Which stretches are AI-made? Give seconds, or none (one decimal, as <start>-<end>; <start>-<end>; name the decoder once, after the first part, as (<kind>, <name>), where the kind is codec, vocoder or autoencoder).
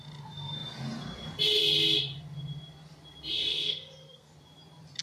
3.5-4.3 (codec, SNAC)